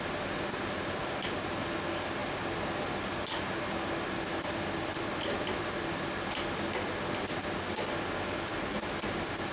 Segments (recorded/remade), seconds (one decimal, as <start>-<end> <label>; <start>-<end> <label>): 0.0-9.5 recorded